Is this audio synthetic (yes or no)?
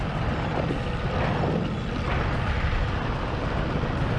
no